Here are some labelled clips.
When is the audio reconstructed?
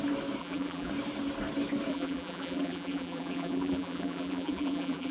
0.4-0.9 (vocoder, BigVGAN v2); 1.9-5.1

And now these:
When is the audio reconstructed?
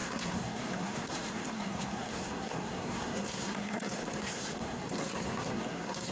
0.0-6.1 (codec, SNAC)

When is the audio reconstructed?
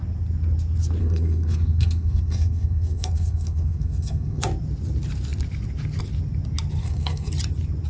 1.0-4.4 (codec, SNAC); 6.8-7.3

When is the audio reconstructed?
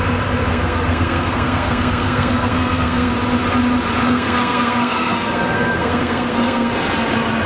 0.5-3.1 (codec, SNAC); 4.0-6.7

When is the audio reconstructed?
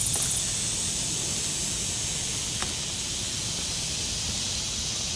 none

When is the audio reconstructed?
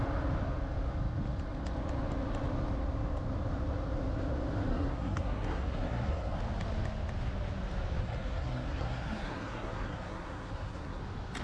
4.7-6.4 (codec, SNAC); 8.0-11.0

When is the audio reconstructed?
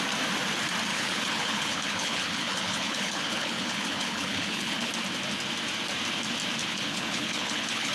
0.9-4.9 (codec, HILCodec); 6.6-7.9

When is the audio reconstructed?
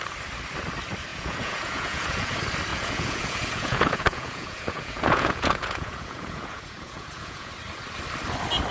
1.1-2.3 (vocoder, Vocos); 2.7-7.5